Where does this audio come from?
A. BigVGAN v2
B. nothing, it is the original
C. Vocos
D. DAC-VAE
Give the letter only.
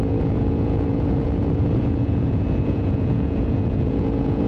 C